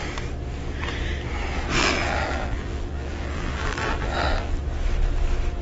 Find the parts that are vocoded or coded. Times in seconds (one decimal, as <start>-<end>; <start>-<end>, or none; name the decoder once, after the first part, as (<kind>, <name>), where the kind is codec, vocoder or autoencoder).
1.8-4.6 (vocoder, BigVGAN v2)